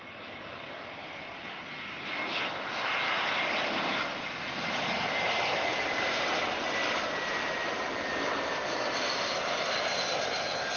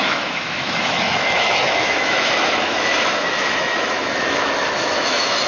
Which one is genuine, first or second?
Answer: first